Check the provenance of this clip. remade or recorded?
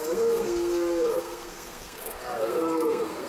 remade